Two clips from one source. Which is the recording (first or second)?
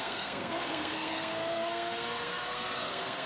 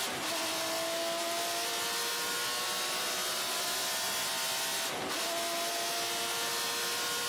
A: second